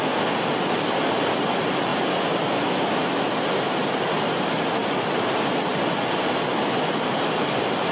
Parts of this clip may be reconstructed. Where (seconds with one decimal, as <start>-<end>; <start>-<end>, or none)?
none